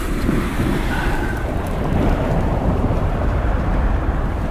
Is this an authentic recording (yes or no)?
no